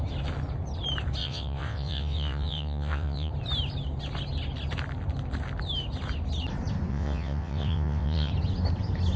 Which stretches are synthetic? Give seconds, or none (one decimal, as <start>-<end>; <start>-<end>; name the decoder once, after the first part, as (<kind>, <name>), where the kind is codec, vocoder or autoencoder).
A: 1.2-3.3 (vocoder, WaveNeXt); 6.9-8.3